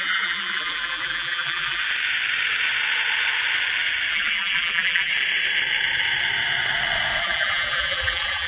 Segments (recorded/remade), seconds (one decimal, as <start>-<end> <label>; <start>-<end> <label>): 0.0-1.8 remade; 1.8-4.1 recorded; 4.1-5.1 remade; 5.1-7.2 recorded; 7.2-8.5 remade